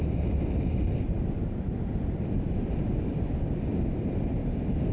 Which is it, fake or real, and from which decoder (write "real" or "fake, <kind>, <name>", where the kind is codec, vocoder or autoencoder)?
real